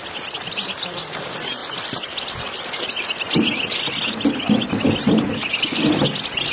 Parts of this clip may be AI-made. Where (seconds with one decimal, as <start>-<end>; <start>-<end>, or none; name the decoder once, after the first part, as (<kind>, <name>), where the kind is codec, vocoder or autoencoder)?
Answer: none